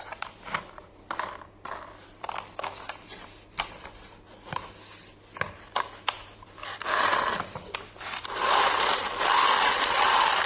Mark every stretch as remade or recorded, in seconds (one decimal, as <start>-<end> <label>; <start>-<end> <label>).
0.0-3.9 remade; 3.9-6.4 recorded; 6.4-10.5 remade